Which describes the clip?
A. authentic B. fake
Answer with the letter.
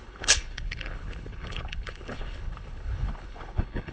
B